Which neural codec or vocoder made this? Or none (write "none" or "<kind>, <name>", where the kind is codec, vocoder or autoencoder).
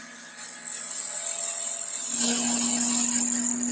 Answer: none